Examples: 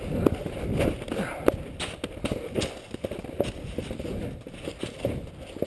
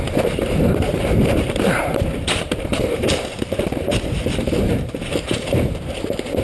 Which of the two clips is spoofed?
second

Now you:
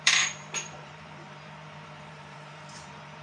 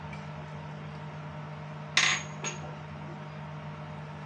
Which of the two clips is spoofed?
first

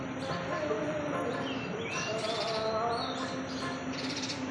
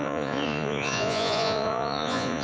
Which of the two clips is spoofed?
second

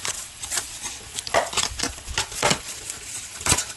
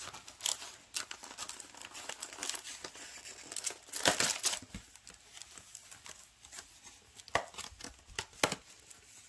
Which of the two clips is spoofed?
first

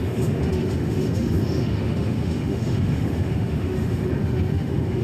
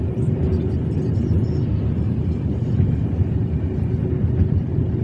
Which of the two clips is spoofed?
first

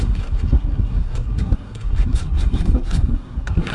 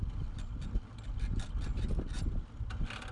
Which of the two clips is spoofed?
first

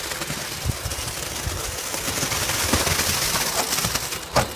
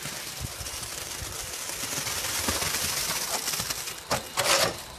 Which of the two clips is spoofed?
second